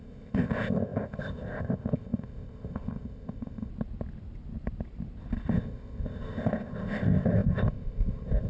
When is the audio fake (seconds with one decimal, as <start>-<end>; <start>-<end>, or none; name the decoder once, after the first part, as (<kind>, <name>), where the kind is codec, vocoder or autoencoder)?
0.0-3.7 (codec, ZipCodec); 5.5-8.5